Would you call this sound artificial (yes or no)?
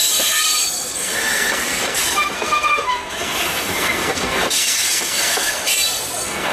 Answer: yes